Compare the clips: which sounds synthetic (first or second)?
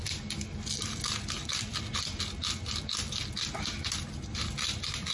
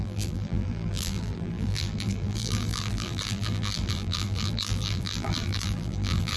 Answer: second